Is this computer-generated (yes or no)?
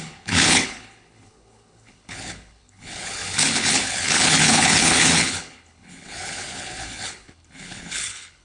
yes